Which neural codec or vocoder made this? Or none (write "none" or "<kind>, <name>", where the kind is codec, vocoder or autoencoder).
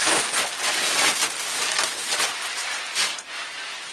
none